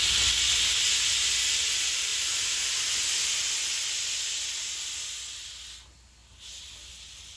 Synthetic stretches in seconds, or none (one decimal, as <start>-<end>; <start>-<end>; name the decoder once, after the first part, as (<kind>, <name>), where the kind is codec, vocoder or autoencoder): none